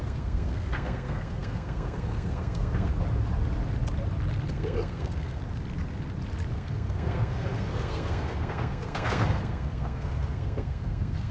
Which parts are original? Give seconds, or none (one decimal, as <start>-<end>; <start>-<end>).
2.9-4.5; 5.4-6.5